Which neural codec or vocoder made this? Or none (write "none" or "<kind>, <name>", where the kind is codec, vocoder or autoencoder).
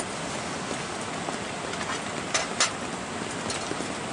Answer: none